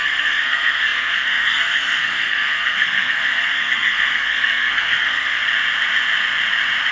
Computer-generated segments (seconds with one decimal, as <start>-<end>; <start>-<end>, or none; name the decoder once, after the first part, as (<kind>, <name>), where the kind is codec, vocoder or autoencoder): 0.0-5.4 (codec, SNAC)